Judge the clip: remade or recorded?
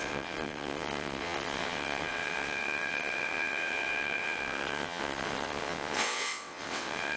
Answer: remade